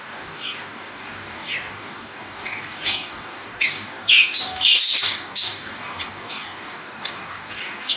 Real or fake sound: fake